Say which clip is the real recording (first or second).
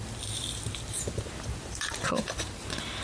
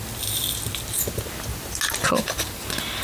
second